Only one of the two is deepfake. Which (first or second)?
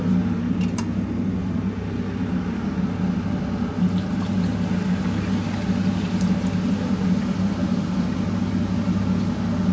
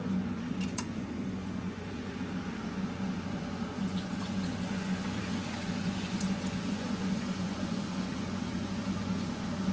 second